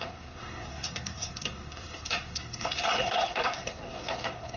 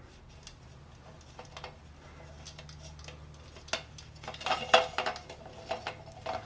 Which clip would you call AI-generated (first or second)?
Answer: first